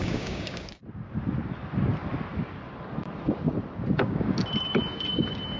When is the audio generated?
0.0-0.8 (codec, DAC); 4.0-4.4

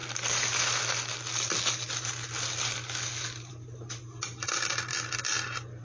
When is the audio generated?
none

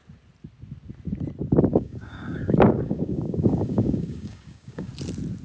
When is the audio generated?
1.7-4.9 (codec, DAC)

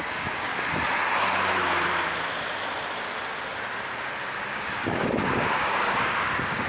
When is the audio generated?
0.0-0.5 (codec, DAC); 4.5-6.7

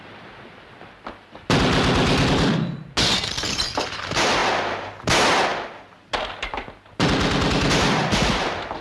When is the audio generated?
none

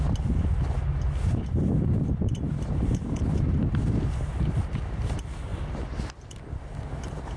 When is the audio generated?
none

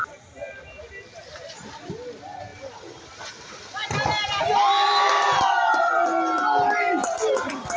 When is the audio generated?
none

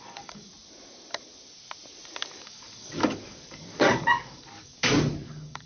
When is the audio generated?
0.0-0.5 (codec, DAC); 2.3-5.7